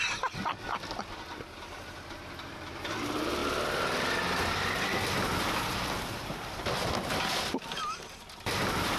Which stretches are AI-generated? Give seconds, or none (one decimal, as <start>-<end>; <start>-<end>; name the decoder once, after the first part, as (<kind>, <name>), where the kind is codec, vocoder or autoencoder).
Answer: none